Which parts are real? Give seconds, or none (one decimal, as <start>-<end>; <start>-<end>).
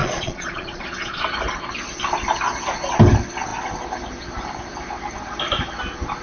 1.2-6.2